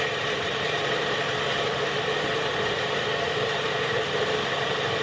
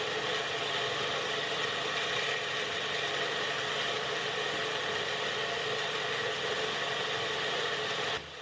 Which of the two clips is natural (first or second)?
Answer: second